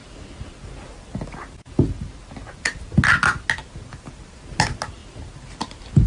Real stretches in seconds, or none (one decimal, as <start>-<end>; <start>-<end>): 0.0-6.1